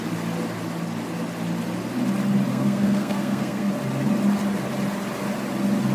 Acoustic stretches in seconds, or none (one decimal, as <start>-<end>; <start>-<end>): 0.0-2.5; 3.7-5.9

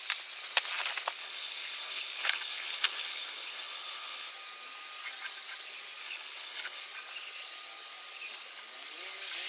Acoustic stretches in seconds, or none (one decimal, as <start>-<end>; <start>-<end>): 0.0-1.2; 4.3-6.0; 6.8-9.5

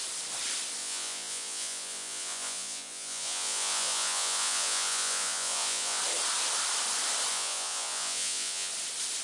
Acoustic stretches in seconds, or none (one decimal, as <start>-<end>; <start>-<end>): 0.0-0.8; 6.0-7.3; 8.7-9.2